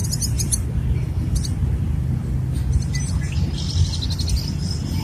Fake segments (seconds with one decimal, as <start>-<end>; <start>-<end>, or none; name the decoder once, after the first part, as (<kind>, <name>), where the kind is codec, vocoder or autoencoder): none